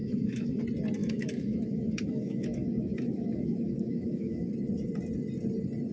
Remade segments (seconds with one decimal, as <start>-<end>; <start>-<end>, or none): 0.0-0.6; 1.0-4.5